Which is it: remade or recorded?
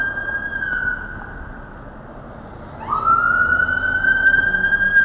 recorded